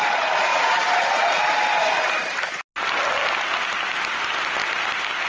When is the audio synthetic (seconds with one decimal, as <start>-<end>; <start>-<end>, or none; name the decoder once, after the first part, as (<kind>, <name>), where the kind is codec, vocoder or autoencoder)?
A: 0.5-1.2 (vocoder, BigVGAN v2)